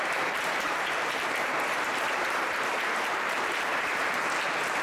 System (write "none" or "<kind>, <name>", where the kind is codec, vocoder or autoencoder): vocoder, BigVGAN v2